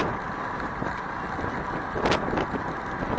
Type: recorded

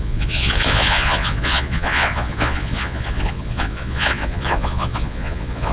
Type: remade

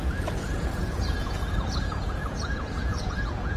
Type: remade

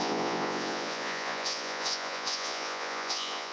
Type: remade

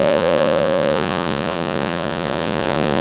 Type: remade